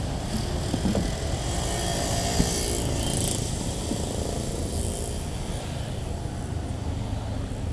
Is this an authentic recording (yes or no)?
yes